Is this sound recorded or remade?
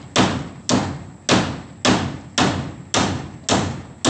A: recorded